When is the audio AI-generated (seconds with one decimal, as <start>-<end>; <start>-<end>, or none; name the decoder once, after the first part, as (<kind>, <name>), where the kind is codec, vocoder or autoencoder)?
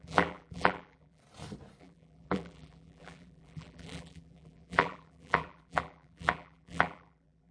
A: 0.0-1.2 (vocoder, BigVGAN v2); 1.8-7.5